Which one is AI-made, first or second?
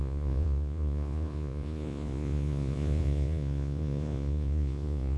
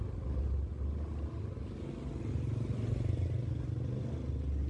first